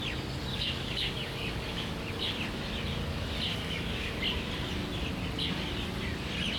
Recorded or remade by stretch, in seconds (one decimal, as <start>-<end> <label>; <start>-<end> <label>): 0.0-0.5 recorded; 0.5-1.9 remade; 1.9-3.5 recorded; 3.5-4.1 remade; 4.1-6.6 recorded